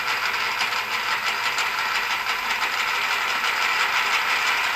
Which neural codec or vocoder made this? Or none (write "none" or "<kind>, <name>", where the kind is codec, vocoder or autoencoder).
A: none